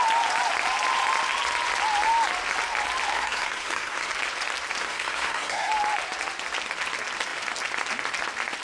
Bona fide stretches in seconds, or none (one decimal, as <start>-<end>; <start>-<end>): 0.0-3.1; 4.1-4.8; 5.7-8.6